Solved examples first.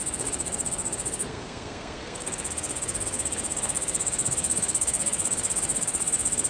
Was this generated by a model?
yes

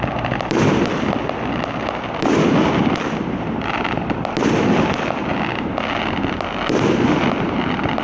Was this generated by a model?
no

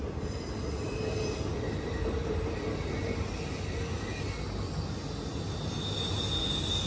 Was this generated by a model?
no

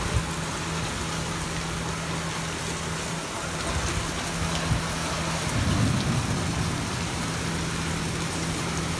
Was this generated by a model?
no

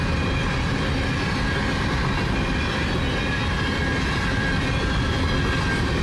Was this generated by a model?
no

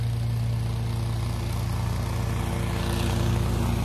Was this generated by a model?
no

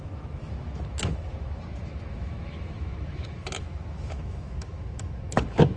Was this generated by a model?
yes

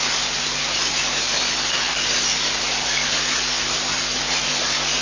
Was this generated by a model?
no